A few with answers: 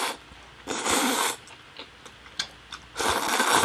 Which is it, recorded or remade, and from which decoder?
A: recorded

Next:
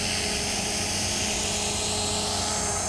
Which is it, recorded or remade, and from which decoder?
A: recorded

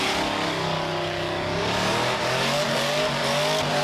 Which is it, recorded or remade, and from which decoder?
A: remade, codec, DAC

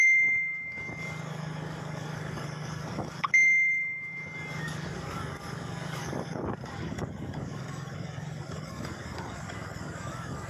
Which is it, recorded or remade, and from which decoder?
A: remade, codec, DAC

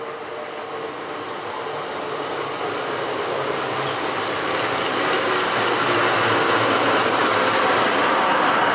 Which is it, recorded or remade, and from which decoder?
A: recorded